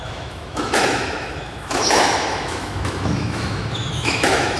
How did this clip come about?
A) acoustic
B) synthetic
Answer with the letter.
B